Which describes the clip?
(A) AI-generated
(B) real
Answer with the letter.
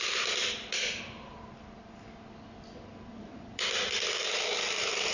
A